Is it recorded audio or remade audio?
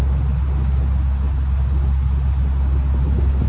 recorded